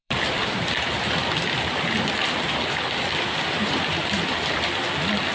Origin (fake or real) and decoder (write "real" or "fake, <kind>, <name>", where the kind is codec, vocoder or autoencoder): fake, vocoder, BigVGAN v2